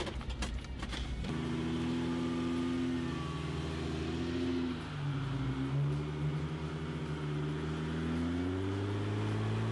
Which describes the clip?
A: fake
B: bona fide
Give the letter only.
B